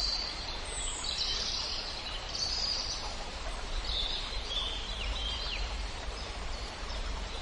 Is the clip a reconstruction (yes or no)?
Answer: yes